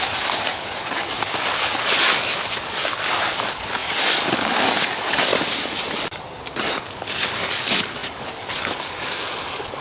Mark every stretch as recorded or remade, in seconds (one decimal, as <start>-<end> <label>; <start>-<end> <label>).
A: 0.0-5.3 remade; 5.3-6.8 recorded; 6.8-9.8 remade